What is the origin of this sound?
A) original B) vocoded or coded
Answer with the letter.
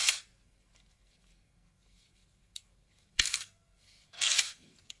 B